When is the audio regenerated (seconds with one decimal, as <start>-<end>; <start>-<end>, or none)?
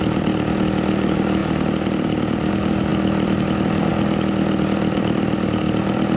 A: none